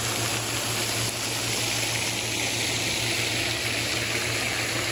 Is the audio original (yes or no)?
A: yes